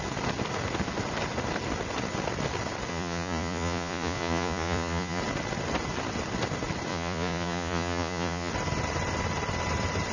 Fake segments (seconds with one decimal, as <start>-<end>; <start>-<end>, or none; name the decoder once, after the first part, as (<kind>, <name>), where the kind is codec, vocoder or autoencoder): 2.9-5.2 (vocoder, Vocos); 6.9-8.5